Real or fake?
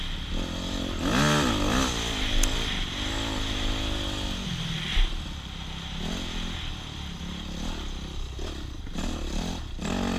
real